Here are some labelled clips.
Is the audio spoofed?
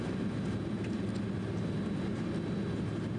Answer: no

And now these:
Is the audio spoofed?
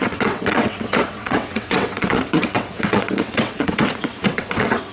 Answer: yes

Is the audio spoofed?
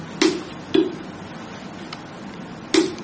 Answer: no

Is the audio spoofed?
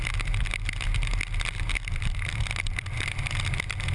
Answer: no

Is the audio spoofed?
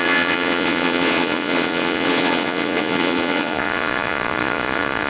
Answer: yes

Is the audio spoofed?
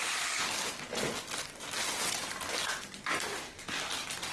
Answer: no